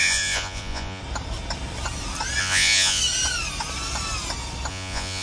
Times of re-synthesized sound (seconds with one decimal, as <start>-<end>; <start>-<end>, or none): 0.0-1.0; 2.4-3.0; 4.7-5.2